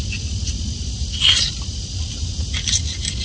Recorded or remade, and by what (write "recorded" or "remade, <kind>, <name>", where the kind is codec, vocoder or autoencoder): recorded